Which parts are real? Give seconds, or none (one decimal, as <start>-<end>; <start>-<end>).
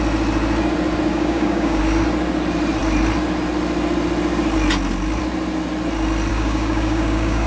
0.0-1.1; 1.8-6.3